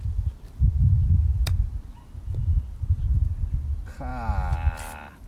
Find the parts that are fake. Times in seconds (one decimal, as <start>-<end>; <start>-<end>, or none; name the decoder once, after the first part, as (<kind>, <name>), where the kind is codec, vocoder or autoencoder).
none